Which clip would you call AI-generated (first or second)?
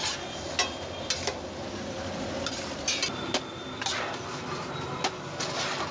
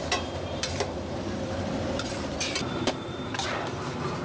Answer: second